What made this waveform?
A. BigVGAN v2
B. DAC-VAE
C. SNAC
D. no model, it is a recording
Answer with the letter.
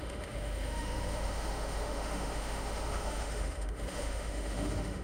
B